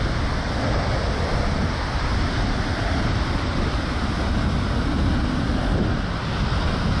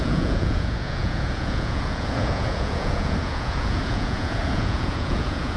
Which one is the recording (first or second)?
first